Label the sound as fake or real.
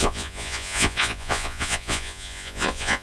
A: fake